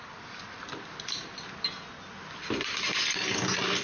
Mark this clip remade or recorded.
recorded